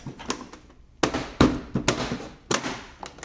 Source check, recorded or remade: recorded